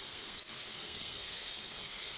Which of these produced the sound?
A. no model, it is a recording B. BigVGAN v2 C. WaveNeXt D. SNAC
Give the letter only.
D